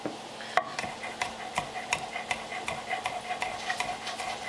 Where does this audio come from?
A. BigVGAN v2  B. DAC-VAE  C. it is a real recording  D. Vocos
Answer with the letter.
C